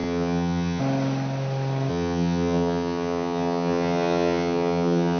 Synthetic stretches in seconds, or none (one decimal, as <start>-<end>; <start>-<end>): 0.0-0.8; 1.9-5.2